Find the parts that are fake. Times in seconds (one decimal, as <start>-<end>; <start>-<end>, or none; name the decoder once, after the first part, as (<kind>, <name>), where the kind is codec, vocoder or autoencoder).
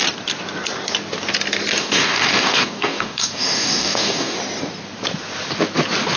1.8-4.4 (codec, DAC)